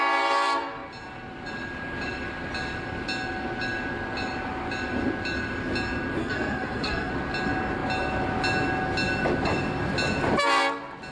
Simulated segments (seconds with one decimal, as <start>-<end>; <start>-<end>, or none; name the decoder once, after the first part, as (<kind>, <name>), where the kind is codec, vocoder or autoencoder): 6.2-7.1 (codec, SNAC)